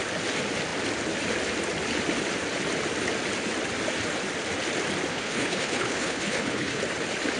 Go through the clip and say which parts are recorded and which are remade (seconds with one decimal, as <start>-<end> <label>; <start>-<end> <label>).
0.0-5.1 recorded; 5.1-6.8 remade; 6.8-7.4 recorded